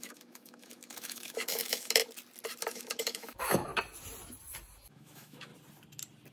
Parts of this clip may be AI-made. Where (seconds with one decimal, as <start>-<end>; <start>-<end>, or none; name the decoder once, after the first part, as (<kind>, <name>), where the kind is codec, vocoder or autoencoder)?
0.0-2.0 (autoencoder, DAC-VAE); 2.7-3.7; 4.9-5.5